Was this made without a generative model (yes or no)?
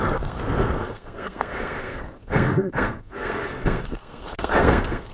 no